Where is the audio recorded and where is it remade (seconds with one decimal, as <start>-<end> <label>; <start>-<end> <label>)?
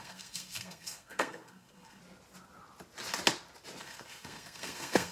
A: 0.0-2.0 remade; 2.0-3.8 recorded; 3.8-5.1 remade